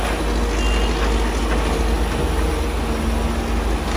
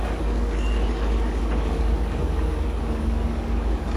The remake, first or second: second